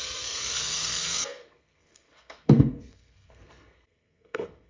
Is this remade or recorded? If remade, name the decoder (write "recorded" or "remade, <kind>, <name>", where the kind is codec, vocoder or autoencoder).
remade, codec, SNAC